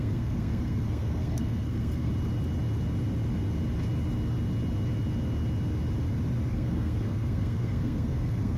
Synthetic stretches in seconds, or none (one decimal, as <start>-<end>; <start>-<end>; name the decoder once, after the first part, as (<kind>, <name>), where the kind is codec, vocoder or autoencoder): 0.0-2.1 (codec, SNAC); 6.5-8.6